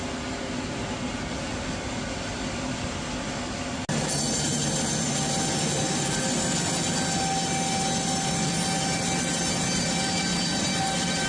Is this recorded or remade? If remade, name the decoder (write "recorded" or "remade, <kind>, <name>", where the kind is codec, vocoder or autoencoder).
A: recorded